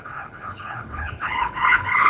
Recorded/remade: remade